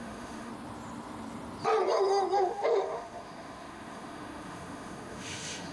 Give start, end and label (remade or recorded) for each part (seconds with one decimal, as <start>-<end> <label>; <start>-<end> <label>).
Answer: 0.0-0.5 remade; 0.5-2.4 recorded; 2.4-5.7 remade